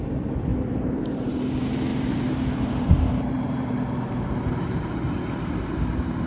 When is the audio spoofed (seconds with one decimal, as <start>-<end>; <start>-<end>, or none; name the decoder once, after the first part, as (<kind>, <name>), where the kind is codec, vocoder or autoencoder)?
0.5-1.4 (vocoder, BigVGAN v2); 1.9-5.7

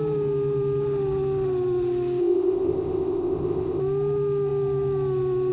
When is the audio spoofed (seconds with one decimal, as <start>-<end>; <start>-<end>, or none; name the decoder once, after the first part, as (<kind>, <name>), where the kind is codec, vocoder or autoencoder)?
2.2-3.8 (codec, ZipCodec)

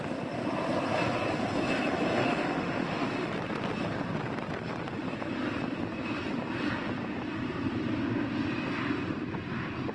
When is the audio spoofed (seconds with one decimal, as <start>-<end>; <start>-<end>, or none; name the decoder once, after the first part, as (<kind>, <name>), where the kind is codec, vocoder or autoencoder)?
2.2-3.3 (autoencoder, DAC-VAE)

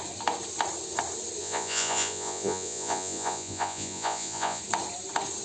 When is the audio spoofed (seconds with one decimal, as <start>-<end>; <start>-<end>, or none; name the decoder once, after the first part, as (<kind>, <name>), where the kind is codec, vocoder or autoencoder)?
1.4-4.6 (vocoder, Vocos)

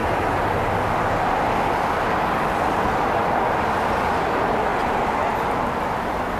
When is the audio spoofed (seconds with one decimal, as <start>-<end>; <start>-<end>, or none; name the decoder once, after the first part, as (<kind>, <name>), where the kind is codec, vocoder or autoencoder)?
none